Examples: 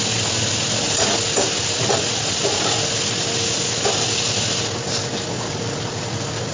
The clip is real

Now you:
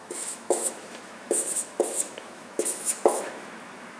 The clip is fake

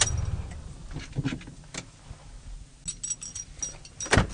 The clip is real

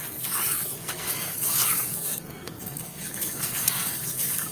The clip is fake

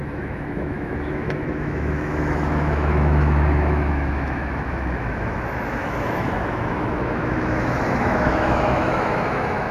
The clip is fake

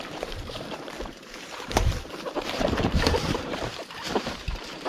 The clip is fake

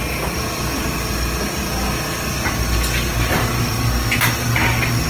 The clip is real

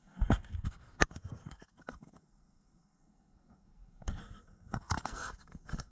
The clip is fake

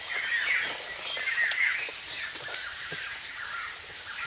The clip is real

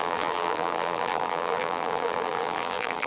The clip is fake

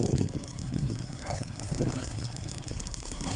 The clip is fake